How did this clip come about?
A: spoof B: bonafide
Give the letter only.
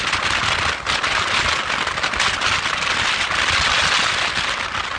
B